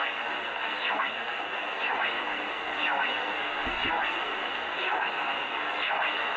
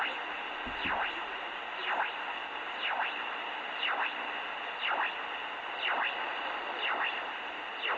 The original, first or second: second